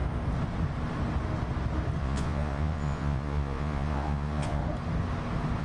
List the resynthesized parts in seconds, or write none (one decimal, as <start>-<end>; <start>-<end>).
2.0-4.6